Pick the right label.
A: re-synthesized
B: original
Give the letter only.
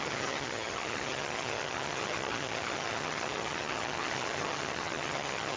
A